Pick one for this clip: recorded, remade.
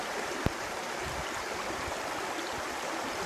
recorded